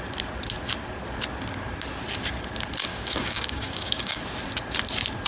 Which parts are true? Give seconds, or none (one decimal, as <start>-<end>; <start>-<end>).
0.0-2.9; 4.2-5.3